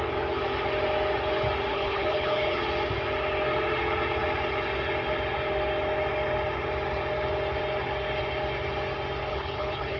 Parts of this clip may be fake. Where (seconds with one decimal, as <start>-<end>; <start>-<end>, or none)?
1.7-2.6; 9.3-10.0